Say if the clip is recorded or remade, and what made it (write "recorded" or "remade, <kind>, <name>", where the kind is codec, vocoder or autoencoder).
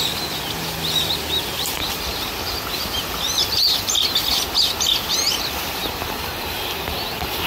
recorded